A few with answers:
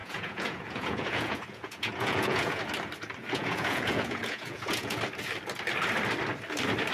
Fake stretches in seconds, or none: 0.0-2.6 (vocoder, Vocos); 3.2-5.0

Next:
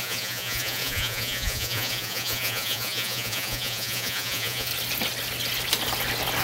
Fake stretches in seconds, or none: 0.0-4.7 (vocoder, Vocos)

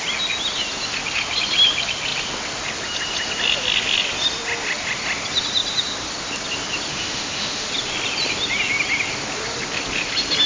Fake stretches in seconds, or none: 6.9-7.7 (autoencoder, DAC-VAE)